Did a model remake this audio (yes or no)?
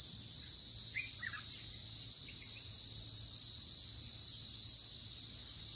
no